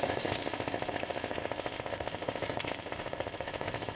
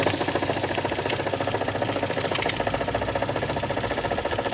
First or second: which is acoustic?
second